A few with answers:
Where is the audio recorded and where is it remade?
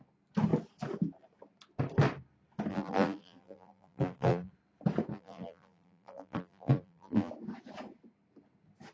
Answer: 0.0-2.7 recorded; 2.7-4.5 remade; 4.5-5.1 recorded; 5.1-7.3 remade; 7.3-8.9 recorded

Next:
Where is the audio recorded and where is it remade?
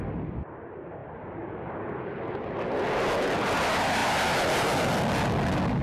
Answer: 0.0-5.8 recorded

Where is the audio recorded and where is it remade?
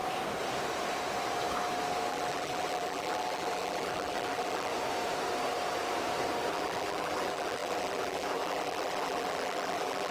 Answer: 0.0-2.1 recorded; 2.1-4.7 remade; 4.7-6.5 recorded; 6.5-10.1 remade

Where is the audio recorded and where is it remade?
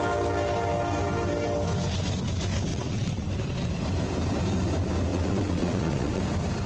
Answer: 0.0-2.7 recorded; 2.7-3.3 remade; 3.3-5.1 recorded; 5.1-6.2 remade; 6.2-6.7 recorded